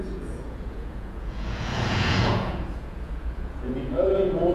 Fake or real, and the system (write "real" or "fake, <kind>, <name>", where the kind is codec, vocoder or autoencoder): fake, vocoder, Vocos